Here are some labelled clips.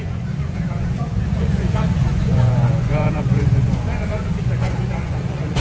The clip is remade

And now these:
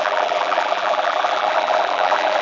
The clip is remade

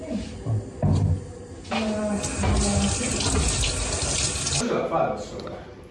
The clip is recorded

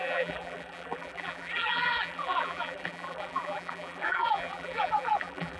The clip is remade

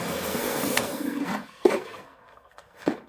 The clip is remade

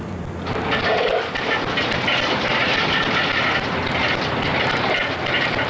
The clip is recorded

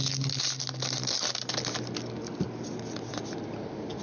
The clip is recorded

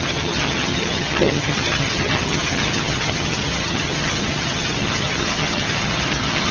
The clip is remade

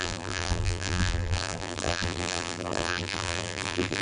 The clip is remade